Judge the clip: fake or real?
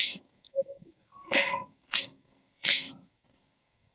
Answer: fake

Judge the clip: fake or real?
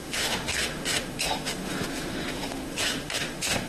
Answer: fake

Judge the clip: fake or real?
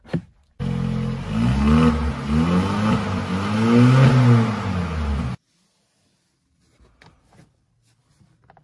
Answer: real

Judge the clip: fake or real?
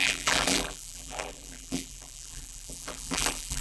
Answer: fake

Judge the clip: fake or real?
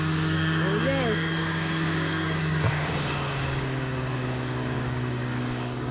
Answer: fake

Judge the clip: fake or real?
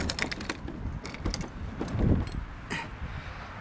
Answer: real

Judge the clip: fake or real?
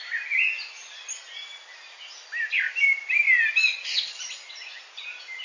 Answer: real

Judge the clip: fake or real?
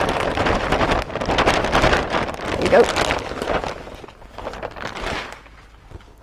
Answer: real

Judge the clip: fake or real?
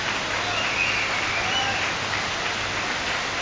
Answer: real